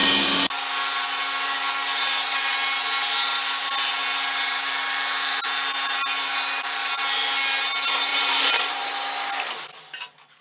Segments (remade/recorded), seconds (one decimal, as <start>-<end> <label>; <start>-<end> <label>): 0.0-8.1 recorded; 8.1-8.8 remade; 8.8-10.4 recorded